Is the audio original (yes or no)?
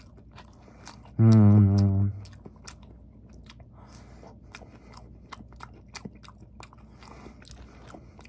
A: yes